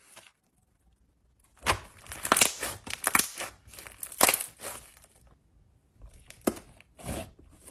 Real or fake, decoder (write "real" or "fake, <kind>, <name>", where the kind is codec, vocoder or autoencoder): real